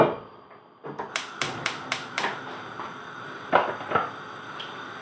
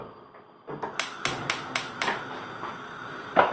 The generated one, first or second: first